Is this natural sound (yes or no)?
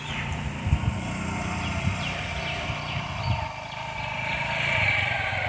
no